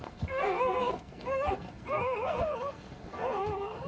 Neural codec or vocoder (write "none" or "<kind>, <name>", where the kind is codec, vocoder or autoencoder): codec, SNAC